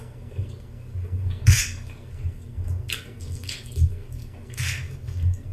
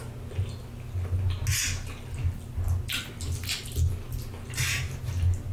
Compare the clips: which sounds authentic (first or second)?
second